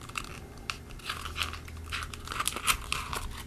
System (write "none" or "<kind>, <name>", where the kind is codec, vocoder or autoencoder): none